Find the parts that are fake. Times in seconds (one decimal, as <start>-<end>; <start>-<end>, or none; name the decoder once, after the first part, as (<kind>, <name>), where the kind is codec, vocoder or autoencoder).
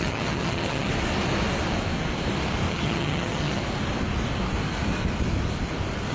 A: 0.0-0.9 (vocoder, HiFi-GAN); 2.7-3.6